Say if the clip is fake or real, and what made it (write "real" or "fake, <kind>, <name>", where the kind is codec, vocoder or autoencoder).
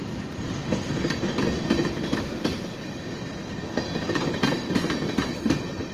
real